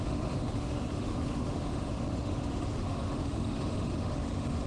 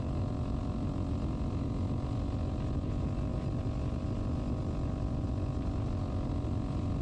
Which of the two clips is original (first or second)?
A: second